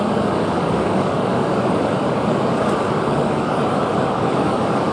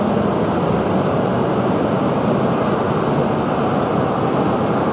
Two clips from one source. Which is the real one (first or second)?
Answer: second